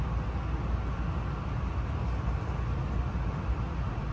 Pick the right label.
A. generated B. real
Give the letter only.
B